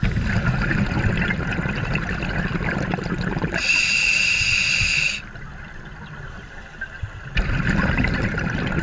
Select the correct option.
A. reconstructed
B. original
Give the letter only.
B